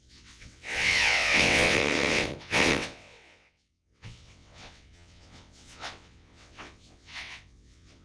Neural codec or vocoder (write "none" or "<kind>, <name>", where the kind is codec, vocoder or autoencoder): vocoder, WaveNeXt